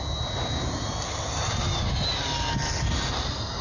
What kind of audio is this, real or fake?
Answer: real